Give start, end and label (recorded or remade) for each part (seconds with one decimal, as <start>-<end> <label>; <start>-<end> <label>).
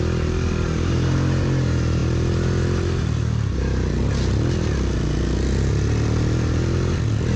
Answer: 0.0-7.4 recorded